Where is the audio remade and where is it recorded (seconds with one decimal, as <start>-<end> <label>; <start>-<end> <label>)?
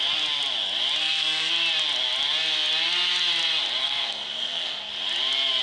0.0-1.0 recorded; 1.0-1.5 remade; 1.5-3.8 recorded; 3.8-4.9 remade; 4.9-5.6 recorded